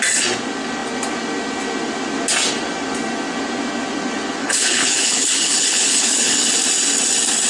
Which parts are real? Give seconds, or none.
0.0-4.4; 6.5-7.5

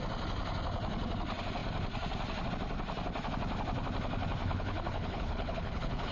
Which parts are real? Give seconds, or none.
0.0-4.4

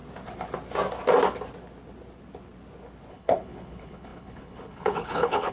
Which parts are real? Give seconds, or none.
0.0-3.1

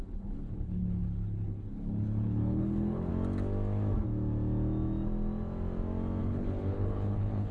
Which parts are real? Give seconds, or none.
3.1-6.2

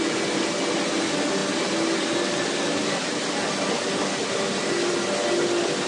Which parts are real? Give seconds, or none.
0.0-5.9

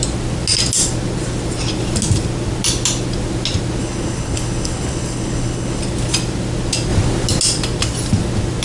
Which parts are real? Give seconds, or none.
0.0-3.8; 5.8-8.6